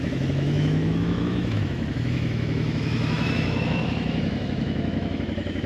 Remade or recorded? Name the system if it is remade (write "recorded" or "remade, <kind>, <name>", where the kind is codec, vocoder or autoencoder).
remade, autoencoder, DAC-VAE